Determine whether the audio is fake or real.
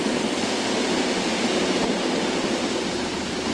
real